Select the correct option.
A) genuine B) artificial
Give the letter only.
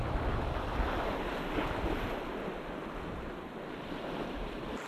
A